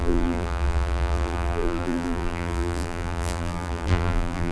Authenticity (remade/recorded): remade